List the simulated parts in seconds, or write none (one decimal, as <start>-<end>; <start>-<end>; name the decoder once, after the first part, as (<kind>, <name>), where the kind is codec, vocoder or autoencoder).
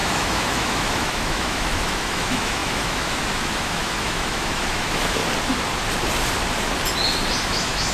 0.0-5.2 (autoencoder, DAC-VAE); 7.4-7.9